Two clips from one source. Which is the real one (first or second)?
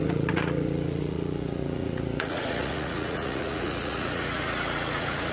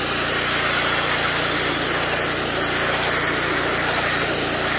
second